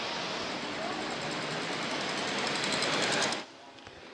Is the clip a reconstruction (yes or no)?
yes